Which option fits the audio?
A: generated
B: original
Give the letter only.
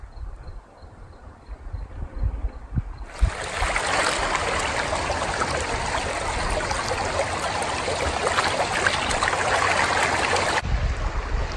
B